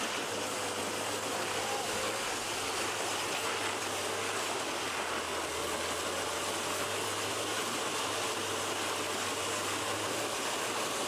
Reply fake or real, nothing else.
real